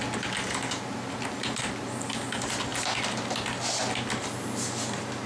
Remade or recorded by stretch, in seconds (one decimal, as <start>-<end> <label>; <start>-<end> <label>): 0.0-5.3 recorded